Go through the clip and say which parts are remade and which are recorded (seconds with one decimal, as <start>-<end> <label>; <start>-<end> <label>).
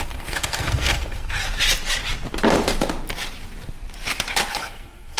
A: 0.0-1.4 remade; 1.4-4.5 recorded; 4.5-5.2 remade